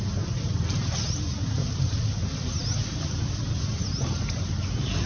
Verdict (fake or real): fake